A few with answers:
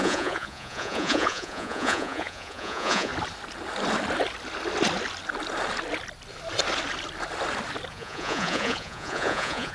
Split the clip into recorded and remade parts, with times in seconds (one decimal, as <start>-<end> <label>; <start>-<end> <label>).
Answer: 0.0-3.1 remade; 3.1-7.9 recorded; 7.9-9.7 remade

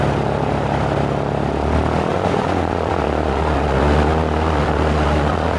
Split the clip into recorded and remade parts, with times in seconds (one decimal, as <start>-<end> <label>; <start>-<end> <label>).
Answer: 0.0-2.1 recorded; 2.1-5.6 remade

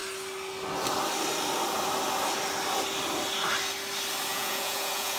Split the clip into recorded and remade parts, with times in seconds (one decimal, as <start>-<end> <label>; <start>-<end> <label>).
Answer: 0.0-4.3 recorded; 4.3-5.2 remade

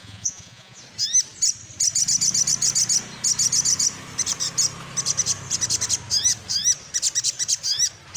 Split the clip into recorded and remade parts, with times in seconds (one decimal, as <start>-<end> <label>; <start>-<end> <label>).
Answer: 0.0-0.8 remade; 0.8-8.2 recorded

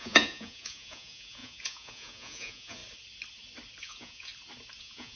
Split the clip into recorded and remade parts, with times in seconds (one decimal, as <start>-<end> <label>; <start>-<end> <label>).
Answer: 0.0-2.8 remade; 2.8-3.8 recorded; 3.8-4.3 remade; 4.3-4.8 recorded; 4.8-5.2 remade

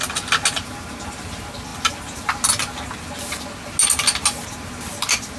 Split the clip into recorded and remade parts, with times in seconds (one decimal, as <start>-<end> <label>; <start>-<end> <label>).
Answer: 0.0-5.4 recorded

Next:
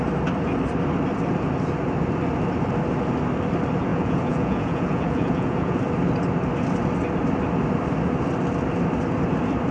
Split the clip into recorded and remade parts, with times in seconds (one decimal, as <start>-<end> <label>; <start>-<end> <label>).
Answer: 0.0-3.9 recorded; 3.9-5.8 remade; 5.8-9.7 recorded

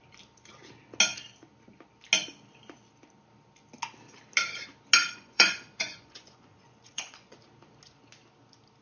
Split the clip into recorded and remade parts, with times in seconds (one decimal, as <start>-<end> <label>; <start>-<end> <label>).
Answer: 0.0-5.0 recorded; 5.0-7.4 remade; 7.4-8.8 recorded